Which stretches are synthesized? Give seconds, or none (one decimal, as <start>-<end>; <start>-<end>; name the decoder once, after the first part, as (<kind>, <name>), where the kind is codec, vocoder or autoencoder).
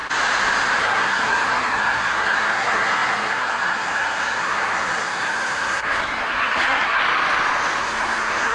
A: 0.8-7.0 (codec, SNAC); 7.8-8.5